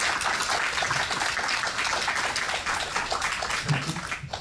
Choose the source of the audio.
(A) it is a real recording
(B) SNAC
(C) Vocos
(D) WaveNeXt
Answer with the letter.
A